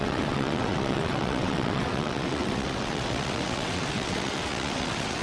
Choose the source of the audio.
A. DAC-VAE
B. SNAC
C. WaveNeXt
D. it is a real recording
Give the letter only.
C